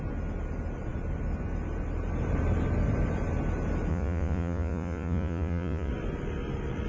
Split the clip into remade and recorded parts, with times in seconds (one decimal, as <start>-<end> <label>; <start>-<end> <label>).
0.0-3.9 recorded; 3.9-5.9 remade; 5.9-6.9 recorded